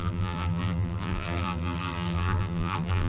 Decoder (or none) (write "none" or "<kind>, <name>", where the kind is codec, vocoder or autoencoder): vocoder, BigVGAN v2